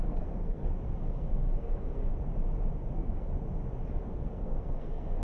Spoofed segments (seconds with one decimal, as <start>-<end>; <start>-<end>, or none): 0.0-2.1; 2.9-3.3; 4.0-5.2